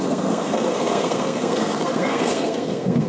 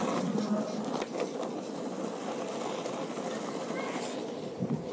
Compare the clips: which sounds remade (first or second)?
first